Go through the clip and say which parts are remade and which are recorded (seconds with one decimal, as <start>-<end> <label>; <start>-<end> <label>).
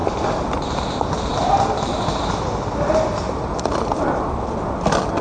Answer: 0.0-5.2 recorded